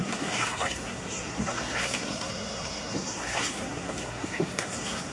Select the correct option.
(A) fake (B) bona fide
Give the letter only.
A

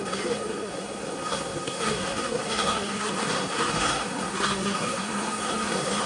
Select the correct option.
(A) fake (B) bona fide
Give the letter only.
A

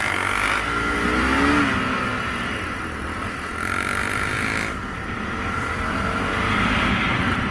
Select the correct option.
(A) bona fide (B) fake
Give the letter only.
A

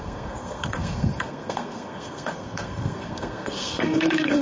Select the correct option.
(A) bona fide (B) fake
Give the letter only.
B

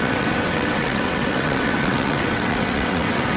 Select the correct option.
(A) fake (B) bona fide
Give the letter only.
A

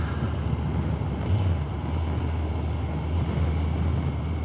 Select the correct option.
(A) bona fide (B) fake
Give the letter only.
A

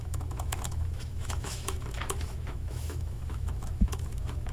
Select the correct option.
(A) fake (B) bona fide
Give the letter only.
A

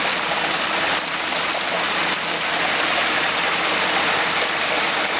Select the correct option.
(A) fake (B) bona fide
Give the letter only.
B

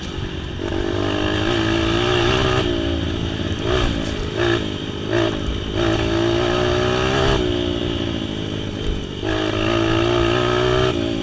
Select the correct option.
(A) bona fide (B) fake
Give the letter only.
A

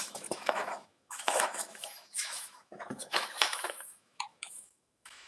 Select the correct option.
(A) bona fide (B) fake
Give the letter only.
B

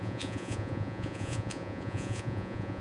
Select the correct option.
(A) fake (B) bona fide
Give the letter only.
A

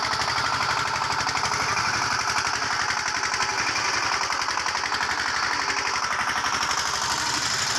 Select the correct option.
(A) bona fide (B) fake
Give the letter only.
A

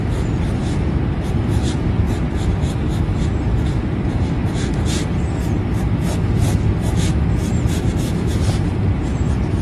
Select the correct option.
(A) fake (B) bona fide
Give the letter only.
A